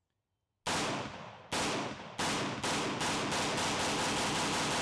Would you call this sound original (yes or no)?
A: yes